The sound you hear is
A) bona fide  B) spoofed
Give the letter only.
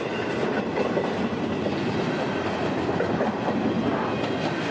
A